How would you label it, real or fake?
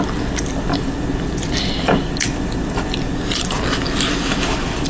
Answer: fake